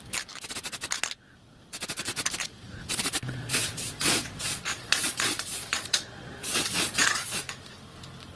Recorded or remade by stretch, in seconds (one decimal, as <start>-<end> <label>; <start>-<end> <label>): 0.0-2.4 recorded; 2.4-7.4 remade; 7.4-8.4 recorded

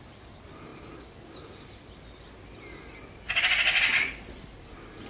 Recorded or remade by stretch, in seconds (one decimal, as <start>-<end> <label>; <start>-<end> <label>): 0.0-5.1 recorded